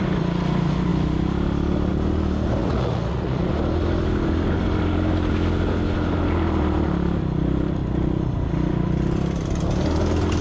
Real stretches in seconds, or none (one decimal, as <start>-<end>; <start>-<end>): 0.0-2.6; 3.5-10.4